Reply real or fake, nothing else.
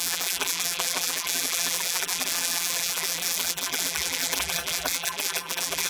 fake